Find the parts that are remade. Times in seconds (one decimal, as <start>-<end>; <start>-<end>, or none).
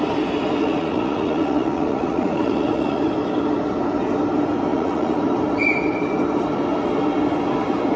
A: 0.6-3.0; 4.7-5.2